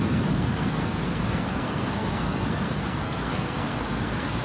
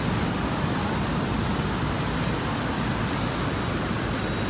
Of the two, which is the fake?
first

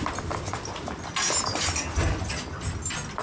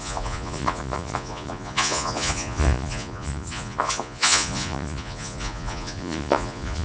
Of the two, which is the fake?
second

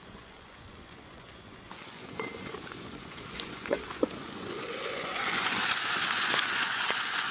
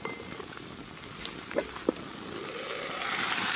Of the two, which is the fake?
first